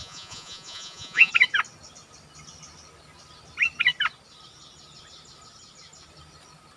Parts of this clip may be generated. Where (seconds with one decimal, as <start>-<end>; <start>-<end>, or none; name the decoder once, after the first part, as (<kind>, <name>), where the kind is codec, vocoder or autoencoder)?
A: 0.0-1.3 (vocoder, Vocos)